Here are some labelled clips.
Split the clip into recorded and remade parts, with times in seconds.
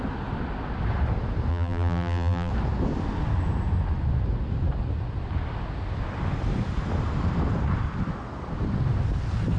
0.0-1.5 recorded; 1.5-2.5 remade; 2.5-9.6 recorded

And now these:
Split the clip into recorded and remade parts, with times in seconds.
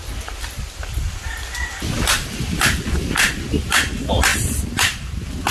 0.0-3.3 remade; 3.3-4.3 recorded; 4.3-5.5 remade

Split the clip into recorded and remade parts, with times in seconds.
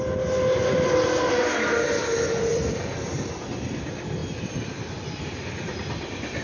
0.0-2.5 recorded; 2.5-3.5 remade; 3.5-6.4 recorded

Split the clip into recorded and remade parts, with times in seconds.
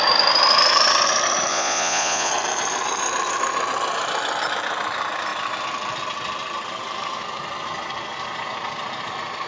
0.0-1.5 recorded; 1.5-2.3 remade; 2.3-9.5 recorded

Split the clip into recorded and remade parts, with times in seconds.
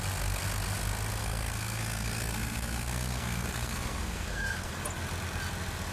0.0-1.2 recorded; 1.2-4.7 remade; 4.7-5.9 recorded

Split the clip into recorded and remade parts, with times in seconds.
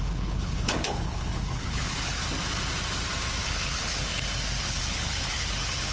0.0-2.2 remade; 2.2-3.4 recorded; 3.4-4.1 remade; 4.1-4.6 recorded; 4.6-5.9 remade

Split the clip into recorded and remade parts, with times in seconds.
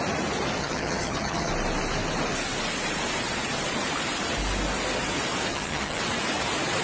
0.0-0.6 recorded; 0.6-1.5 remade; 1.5-5.5 recorded; 5.5-6.0 remade; 6.0-6.8 recorded